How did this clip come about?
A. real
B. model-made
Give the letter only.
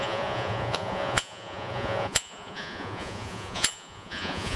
B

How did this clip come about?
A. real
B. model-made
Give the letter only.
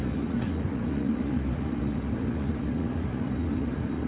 B